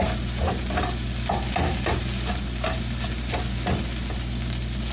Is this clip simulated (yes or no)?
no